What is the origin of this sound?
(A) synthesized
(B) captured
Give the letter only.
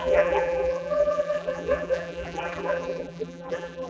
A